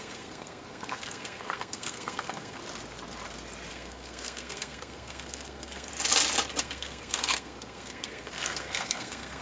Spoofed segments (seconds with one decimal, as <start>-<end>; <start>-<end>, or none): 0.0-2.6; 3.7-5.9; 6.6-9.4